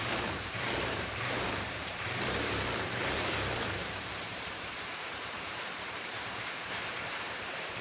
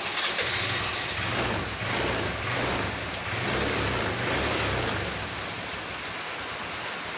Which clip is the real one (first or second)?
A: second